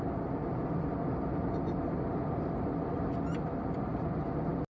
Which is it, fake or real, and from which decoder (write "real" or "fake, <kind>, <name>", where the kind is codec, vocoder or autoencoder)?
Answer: real